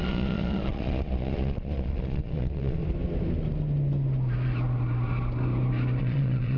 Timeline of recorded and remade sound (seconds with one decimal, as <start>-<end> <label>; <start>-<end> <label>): 0.0-2.8 remade; 2.8-6.0 recorded; 6.0-6.6 remade